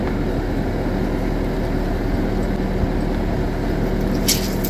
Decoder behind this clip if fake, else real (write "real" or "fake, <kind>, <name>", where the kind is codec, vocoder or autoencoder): real